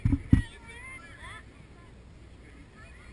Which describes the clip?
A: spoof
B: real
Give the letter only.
B